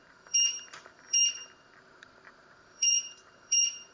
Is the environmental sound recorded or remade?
remade